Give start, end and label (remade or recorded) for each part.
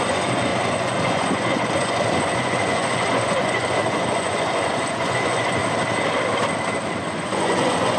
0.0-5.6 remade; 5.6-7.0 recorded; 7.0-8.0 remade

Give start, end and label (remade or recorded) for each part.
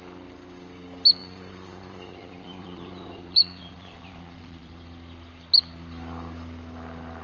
0.0-1.2 recorded; 1.2-4.7 remade; 4.7-7.2 recorded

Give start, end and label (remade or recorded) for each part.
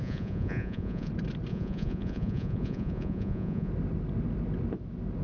0.0-1.1 remade; 1.1-1.5 recorded; 1.5-3.7 remade; 3.7-5.2 recorded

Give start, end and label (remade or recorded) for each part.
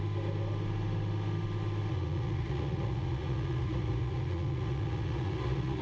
0.0-1.9 recorded; 1.9-5.8 remade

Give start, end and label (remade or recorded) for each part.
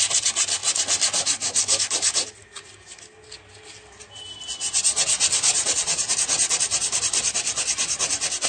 0.0-5.3 recorded; 5.3-6.1 remade; 6.1-8.5 recorded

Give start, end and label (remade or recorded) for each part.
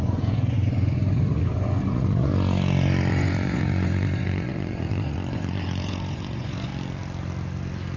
0.0-2.3 remade; 2.3-3.1 recorded; 3.1-6.7 remade; 6.7-8.0 recorded